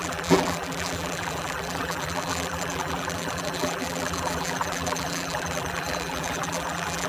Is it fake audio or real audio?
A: fake